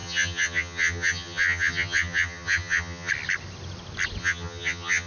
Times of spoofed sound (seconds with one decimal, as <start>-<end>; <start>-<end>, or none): 0.0-3.1; 4.2-5.1